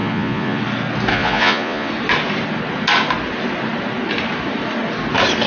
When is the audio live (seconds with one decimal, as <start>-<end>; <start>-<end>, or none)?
0.6-1.1; 1.9-5.5